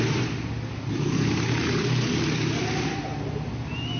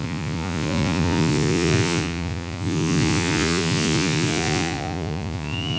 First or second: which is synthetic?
second